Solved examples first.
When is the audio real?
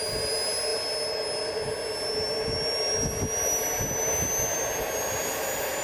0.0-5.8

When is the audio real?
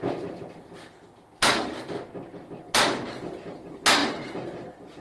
0.0-5.0